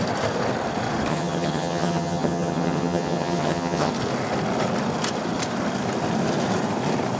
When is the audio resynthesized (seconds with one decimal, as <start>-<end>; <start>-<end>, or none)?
1.1-3.9

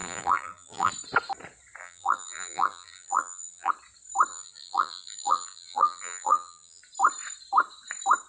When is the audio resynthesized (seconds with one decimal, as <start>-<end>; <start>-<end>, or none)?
0.0-0.9; 1.8-3.7; 4.3-6.8